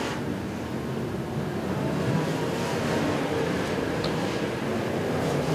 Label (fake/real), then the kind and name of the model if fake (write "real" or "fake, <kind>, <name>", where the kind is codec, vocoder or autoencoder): real